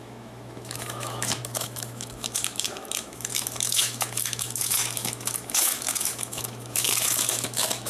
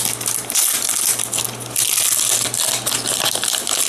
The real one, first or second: second